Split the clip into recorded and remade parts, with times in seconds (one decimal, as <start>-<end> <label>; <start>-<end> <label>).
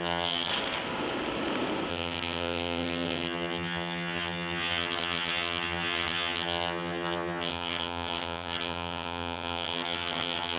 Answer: 0.0-0.5 remade; 0.5-1.9 recorded; 1.9-10.6 remade